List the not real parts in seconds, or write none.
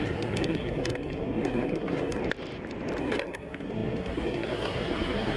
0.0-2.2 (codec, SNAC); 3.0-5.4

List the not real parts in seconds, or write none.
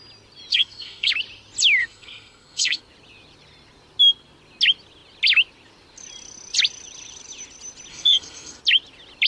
0.5-1.1 (codec, SNAC); 1.8-2.8; 7.9-8.6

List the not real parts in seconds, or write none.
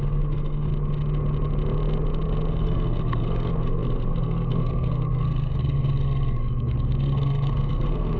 0.0-0.7 (codec, SNAC); 2.5-8.2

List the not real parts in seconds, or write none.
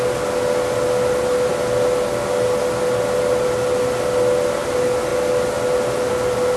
none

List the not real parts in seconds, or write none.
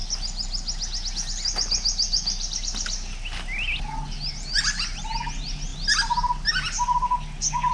none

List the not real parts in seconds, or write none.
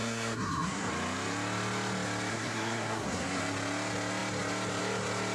0.0-0.9 (codec, SNAC); 2.3-3.4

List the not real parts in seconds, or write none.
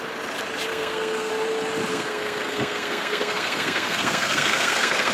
0.7-1.3 (codec, SNAC); 1.9-5.1